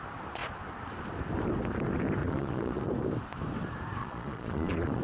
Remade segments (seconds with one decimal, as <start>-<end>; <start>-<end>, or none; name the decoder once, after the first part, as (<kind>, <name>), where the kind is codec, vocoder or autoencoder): 2.2-2.9 (vocoder, Vocos); 4.0-5.0